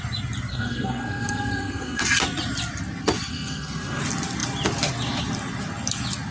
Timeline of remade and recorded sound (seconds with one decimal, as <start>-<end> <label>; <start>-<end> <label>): 0.0-0.5 recorded; 0.5-2.0 remade; 2.0-3.3 recorded; 3.3-4.0 remade; 4.0-6.3 recorded